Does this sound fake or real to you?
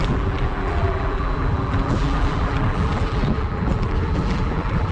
fake